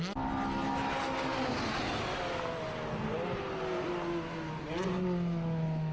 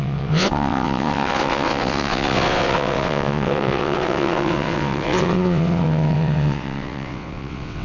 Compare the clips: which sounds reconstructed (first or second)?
second